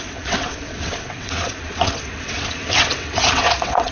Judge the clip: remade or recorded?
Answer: remade